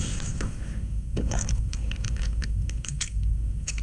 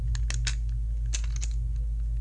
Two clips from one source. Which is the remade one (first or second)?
first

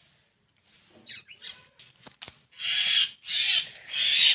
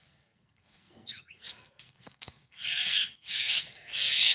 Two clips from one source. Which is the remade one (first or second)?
second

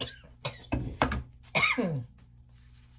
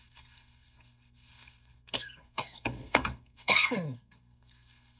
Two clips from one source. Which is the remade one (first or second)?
second